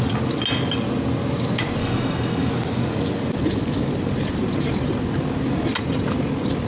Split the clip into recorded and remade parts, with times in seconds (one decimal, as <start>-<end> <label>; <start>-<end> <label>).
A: 0.0-1.8 recorded; 1.8-2.5 remade; 2.5-6.7 recorded